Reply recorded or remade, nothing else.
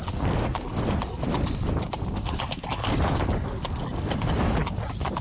recorded